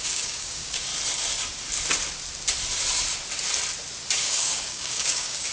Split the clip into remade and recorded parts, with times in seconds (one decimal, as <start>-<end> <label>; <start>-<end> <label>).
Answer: 0.0-0.9 remade; 0.9-4.2 recorded; 4.2-5.5 remade